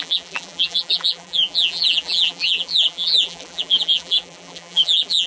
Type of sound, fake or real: fake